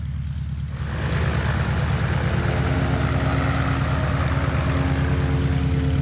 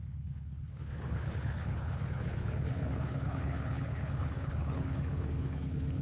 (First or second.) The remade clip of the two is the second